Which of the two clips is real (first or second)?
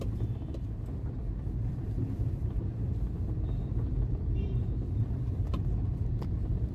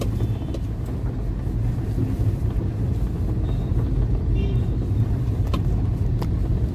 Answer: second